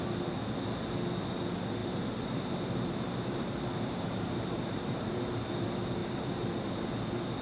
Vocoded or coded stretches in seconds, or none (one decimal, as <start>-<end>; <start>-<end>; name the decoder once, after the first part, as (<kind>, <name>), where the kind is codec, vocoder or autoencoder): 1.8-5.5 (vocoder, BigVGAN v2); 6.0-6.9